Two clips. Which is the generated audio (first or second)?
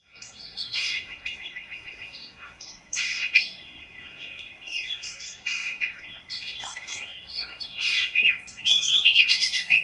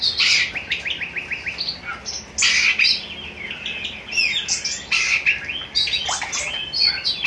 first